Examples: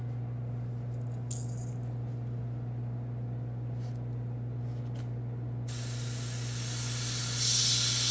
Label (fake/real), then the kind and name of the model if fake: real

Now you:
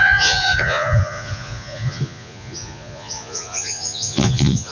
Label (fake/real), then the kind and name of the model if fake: fake, vocoder, Vocos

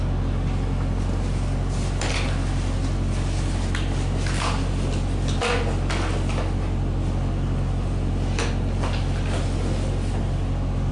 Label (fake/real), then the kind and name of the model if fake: real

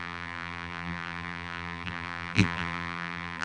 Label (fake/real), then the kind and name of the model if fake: fake, vocoder, BigVGAN v2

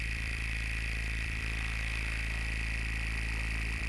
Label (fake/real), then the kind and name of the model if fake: fake, vocoder, BigVGAN v2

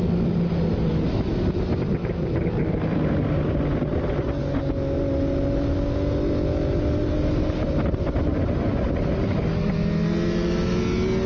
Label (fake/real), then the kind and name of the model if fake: real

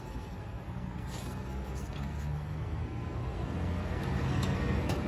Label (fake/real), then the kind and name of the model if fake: fake, codec, SNAC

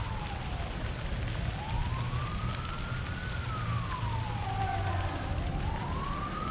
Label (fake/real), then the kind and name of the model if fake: real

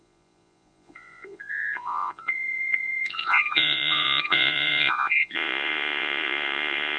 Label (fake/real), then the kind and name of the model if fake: fake, vocoder, Vocos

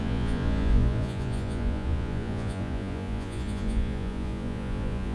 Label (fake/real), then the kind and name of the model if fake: fake, vocoder, Vocos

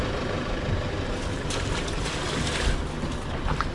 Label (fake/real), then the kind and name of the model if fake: real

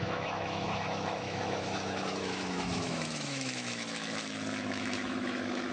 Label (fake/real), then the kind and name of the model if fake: fake, autoencoder, DAC-VAE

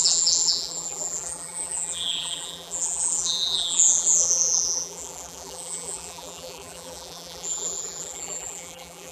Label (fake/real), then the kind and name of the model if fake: fake, vocoder, BigVGAN v2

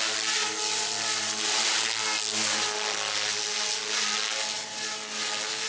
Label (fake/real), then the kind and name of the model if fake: real